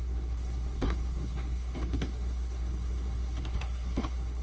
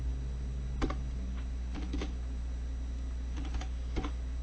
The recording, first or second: second